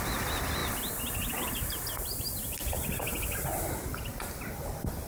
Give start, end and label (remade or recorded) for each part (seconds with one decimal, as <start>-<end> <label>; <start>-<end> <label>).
0.0-5.1 recorded